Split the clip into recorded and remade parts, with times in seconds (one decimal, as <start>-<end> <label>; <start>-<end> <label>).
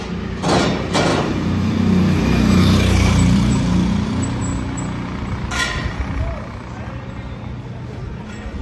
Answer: 0.0-1.1 recorded; 1.1-4.4 remade; 4.4-8.6 recorded